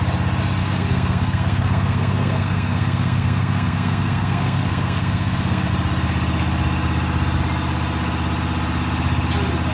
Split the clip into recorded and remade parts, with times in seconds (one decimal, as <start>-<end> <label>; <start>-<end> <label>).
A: 0.0-0.6 recorded; 0.6-5.7 remade; 5.7-9.7 recorded